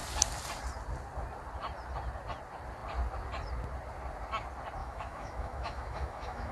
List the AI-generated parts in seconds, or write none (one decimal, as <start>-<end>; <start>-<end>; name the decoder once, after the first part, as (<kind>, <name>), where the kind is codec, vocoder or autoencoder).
4.8-6.5 (autoencoder, DAC-VAE)